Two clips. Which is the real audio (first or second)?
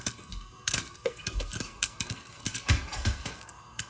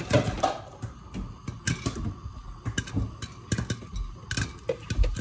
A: second